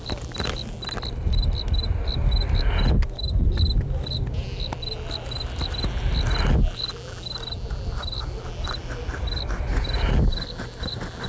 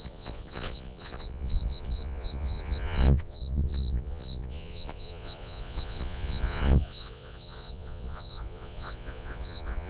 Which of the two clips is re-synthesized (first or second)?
second